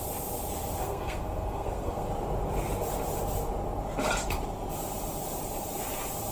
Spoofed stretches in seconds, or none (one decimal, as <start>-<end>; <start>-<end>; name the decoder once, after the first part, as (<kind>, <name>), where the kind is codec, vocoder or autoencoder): 0.8-2.1 (codec, SNAC)